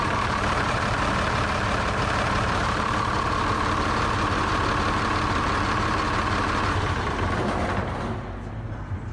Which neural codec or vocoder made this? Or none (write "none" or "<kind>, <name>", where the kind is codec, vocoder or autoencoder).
vocoder, BigVGAN v2